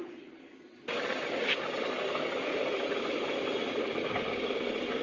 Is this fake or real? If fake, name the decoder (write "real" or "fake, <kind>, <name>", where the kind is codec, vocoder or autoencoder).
real